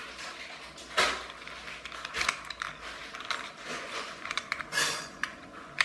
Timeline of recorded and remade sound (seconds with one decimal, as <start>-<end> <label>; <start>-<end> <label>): 0.0-3.7 recorded; 3.7-5.8 remade